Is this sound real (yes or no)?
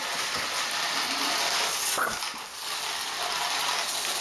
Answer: yes